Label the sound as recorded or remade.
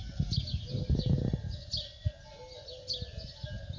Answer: recorded